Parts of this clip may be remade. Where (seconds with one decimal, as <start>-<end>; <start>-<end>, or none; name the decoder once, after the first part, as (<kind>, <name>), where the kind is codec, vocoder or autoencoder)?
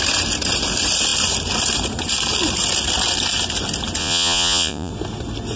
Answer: 4.0-4.9 (vocoder, Vocos)